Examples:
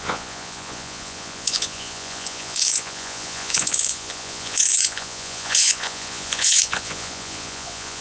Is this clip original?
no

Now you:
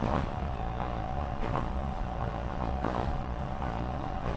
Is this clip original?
no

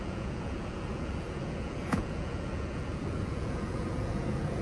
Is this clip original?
no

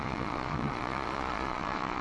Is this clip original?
no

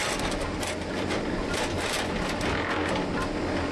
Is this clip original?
yes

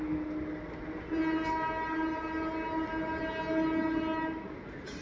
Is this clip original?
yes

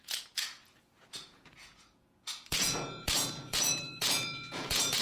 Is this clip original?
no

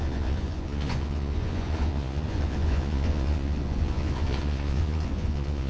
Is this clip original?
no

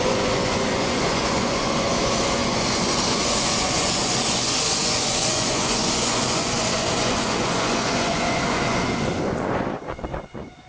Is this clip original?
no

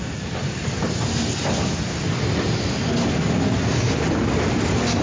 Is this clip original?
yes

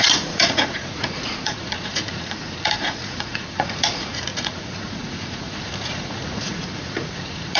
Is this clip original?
no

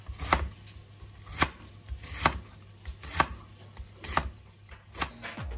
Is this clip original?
yes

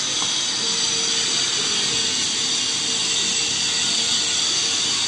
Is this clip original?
yes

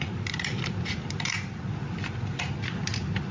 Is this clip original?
yes